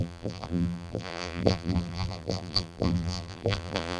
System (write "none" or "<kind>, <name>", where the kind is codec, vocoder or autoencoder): vocoder, BigVGAN v2